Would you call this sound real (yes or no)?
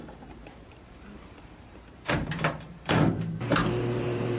no